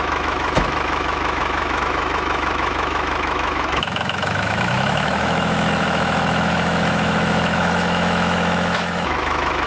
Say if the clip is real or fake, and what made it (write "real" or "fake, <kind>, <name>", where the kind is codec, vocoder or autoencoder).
fake, autoencoder, DAC-VAE